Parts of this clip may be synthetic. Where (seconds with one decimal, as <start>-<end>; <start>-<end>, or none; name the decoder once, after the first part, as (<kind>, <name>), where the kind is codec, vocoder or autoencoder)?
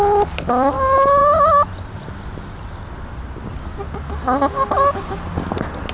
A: none